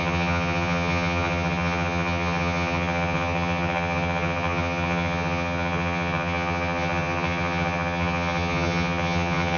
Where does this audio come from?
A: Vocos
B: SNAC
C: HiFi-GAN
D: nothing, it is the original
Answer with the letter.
C